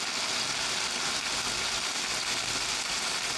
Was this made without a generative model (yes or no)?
yes